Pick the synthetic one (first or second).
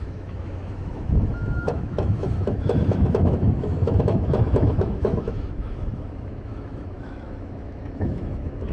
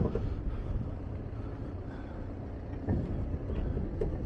first